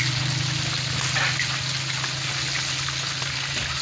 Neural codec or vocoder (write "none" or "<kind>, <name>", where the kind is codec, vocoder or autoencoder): none